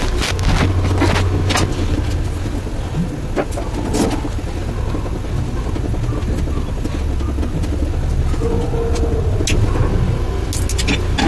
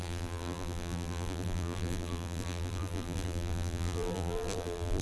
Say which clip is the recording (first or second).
first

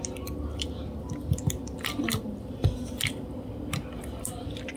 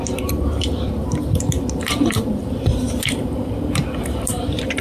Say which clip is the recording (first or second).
first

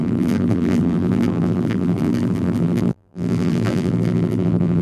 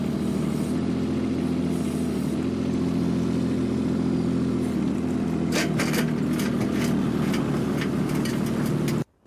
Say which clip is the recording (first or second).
second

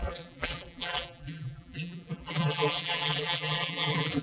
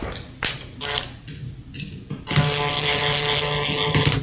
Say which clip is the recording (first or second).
second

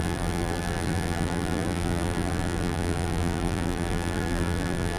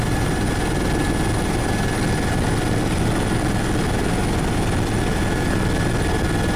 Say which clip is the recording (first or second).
second